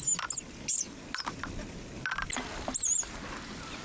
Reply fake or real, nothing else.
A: real